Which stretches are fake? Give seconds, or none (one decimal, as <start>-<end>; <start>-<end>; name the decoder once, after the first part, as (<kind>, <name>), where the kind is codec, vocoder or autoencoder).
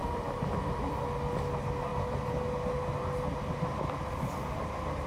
0.0-0.9 (vocoder, BigVGAN v2)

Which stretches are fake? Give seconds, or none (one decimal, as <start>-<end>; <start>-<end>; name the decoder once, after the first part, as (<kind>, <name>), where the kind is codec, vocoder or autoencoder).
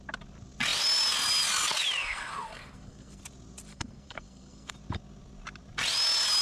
2.0-3.2 (codec, SNAC); 3.7-4.7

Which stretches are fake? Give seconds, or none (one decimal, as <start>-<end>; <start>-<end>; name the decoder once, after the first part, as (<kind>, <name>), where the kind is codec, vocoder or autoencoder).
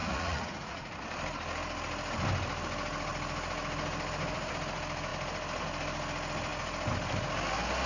0.0-0.9 (vocoder, Vocos)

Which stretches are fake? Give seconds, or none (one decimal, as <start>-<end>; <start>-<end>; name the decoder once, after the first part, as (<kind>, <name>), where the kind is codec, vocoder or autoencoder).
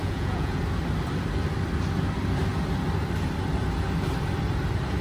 0.0-0.6 (vocoder, Vocos)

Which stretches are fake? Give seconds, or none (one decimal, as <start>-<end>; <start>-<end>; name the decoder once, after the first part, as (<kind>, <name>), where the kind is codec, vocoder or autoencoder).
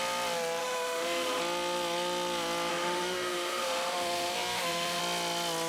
0.6-1.4 (autoencoder, DAC-VAE); 2.7-5.0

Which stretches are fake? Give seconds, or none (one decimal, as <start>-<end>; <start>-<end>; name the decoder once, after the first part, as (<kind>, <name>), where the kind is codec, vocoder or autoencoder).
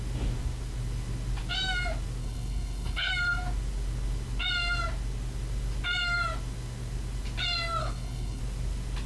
2.2-3.1 (codec, HILCodec); 7.8-8.4